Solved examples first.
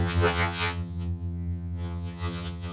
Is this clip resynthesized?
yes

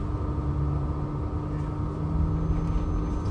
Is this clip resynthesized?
no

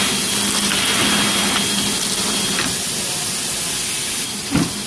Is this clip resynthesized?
no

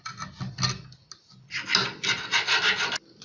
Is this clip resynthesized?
no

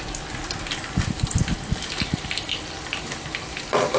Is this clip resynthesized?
no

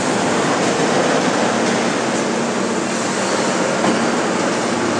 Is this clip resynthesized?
no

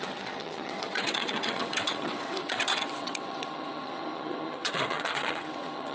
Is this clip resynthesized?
yes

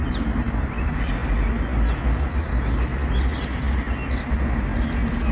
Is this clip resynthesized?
no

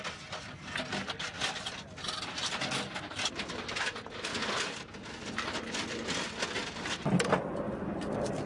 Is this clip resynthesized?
no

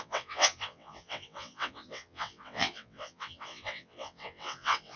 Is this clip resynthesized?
yes